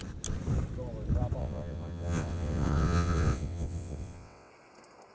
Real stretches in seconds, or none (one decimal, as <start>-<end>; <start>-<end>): 0.0-1.4; 4.5-5.1